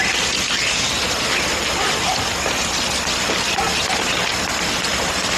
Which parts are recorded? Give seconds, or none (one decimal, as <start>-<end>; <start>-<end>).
0.0-5.4